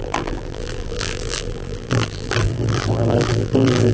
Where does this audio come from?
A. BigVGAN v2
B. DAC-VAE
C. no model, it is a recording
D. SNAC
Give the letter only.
A